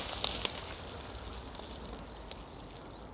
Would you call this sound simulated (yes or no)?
no